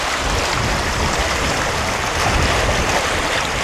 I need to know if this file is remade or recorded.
recorded